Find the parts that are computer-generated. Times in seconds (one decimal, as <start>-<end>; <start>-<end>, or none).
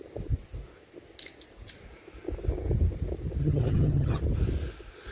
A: 3.4-4.2